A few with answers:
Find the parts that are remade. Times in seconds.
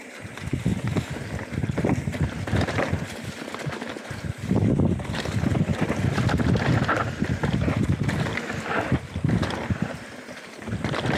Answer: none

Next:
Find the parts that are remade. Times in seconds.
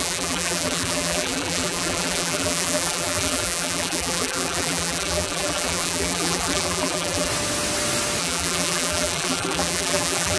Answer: 0.0-7.3 (vocoder, BigVGAN v2); 8.2-10.4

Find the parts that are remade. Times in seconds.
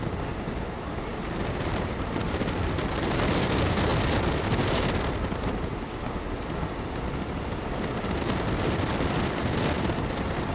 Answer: 1.1-2.2 (vocoder, BigVGAN v2)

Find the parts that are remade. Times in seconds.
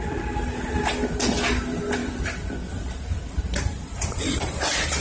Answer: 0.0-2.0 (vocoder, BigVGAN v2); 2.5-5.0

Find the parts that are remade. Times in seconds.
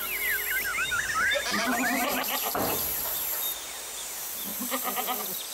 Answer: 0.7-4.0 (vocoder, BigVGAN v2); 4.5-5.0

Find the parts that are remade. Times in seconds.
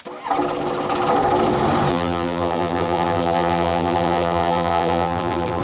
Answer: 1.9-5.6 (vocoder, BigVGAN v2)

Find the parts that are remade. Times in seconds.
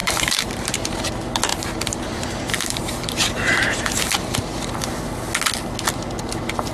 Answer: 0.0-1.1 (vocoder, BigVGAN v2); 1.5-4.7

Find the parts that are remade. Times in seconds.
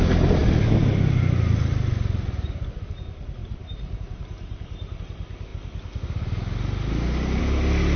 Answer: 3.4-5.0 (vocoder, BigVGAN v2)